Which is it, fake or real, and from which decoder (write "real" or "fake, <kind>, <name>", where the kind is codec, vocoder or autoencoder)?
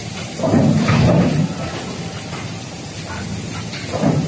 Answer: real